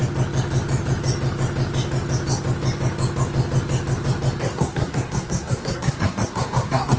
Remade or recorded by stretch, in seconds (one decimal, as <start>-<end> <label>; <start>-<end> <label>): 0.0-4.4 recorded; 4.4-7.0 remade